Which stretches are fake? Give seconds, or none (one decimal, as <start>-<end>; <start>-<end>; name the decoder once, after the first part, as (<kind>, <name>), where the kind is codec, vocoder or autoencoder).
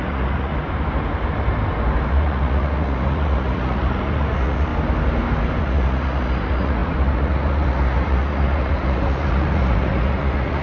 0.0-0.5 (vocoder, Vocos); 2.1-4.7; 5.6-10.6